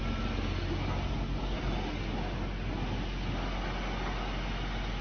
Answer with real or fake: real